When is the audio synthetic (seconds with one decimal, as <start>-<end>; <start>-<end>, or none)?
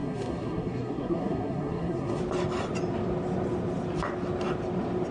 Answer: 0.0-2.2